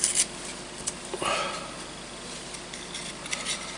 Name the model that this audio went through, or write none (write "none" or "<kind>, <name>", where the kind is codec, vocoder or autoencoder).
none